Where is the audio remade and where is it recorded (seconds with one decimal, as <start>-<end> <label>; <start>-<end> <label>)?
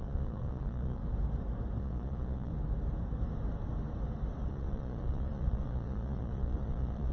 0.0-1.0 remade; 1.0-1.8 recorded; 1.8-2.5 remade; 2.5-4.5 recorded; 4.5-7.1 remade